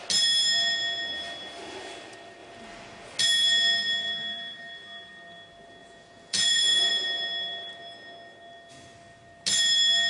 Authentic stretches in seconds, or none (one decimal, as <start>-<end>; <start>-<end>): 0.0-5.8; 6.9-10.1